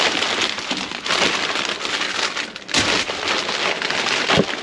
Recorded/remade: recorded